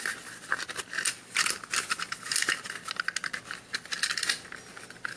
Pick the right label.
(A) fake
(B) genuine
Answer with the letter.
B